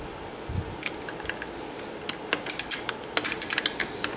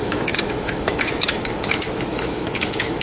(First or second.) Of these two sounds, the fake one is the second